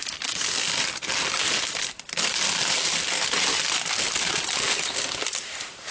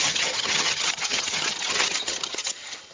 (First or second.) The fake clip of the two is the second